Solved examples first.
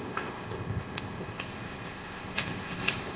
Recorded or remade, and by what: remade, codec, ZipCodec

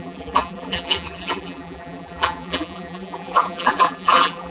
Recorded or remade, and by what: remade, vocoder, BigVGAN v2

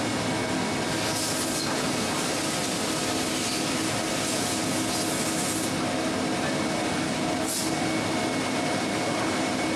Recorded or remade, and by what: recorded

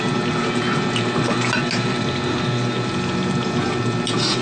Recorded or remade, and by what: recorded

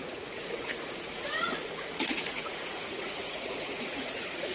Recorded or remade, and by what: remade, vocoder, Vocos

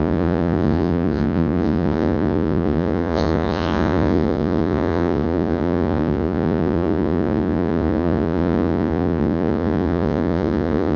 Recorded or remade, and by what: remade, vocoder, Vocos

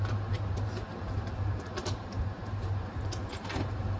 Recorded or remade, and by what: remade, vocoder, BigVGAN v2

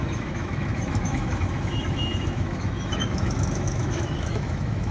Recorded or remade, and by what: remade, autoencoder, DAC-VAE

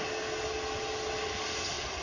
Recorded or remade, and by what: recorded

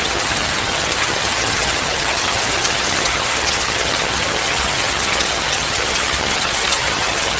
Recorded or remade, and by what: remade, vocoder, HiFi-GAN